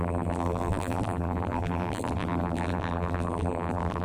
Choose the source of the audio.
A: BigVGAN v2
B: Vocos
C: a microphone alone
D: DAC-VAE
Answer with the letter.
A